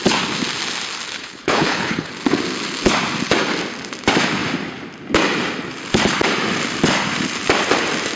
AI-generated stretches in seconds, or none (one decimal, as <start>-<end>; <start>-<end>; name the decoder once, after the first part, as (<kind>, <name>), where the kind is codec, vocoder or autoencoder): 1.2-2.1 (codec, HILCodec)